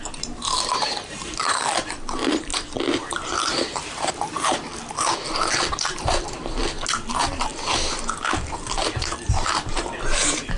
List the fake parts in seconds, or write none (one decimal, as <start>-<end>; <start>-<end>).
0.0-2.5; 3.1-4.7; 5.7-6.6; 7.1-7.5; 8.5-10.6

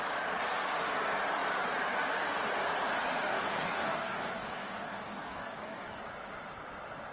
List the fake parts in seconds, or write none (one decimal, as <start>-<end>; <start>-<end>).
3.3-6.0

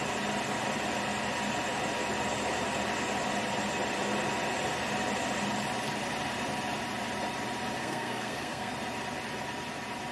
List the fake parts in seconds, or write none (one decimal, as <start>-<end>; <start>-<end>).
7.8-8.7

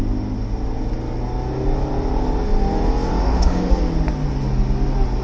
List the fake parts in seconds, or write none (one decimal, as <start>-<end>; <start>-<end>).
3.2-3.7

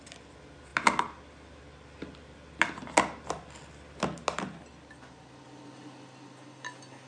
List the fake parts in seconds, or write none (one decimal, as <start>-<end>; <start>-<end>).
none